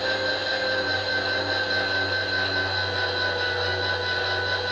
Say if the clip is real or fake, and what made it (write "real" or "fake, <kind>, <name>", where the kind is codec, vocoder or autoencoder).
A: real